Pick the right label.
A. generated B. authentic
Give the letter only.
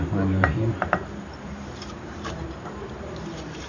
A